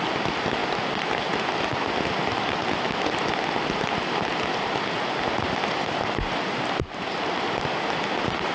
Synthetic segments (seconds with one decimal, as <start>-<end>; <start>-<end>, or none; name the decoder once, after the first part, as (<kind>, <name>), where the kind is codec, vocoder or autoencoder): none

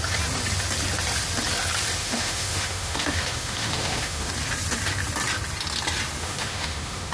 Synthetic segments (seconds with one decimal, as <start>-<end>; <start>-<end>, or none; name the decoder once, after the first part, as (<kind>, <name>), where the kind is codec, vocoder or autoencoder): 2.0-4.3 (autoencoder, DAC-VAE); 6.2-7.1

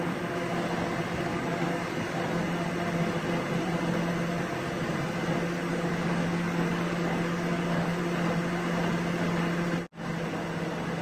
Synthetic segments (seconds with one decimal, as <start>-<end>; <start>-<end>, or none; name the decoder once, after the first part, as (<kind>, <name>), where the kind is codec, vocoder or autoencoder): 1.3-2.2 (codec, DAC); 5.7-8.0